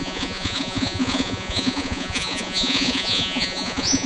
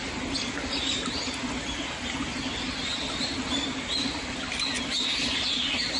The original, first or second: second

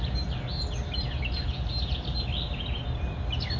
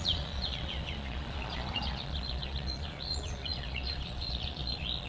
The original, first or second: first